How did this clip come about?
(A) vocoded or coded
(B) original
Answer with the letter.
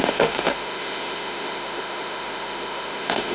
A